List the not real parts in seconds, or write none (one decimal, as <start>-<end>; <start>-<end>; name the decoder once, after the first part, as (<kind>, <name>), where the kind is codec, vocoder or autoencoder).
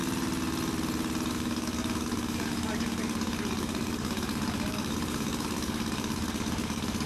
1.3-7.1 (codec, DAC)